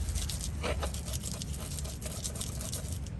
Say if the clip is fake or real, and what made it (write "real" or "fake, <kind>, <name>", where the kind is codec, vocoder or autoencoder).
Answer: real